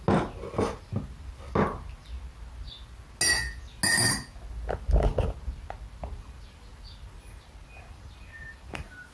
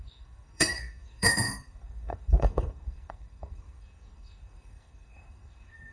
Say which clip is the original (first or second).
first